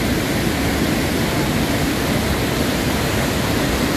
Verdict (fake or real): real